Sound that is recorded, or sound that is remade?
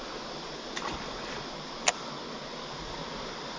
recorded